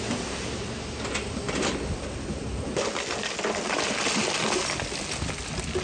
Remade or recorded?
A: recorded